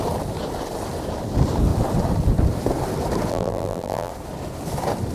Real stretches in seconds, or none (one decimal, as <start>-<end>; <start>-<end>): 0.0-3.3; 4.1-5.1